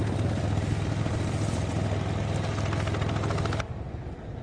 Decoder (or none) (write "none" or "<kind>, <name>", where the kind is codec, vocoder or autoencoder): none